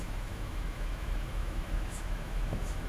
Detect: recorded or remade remade